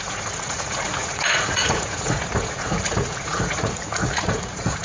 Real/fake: fake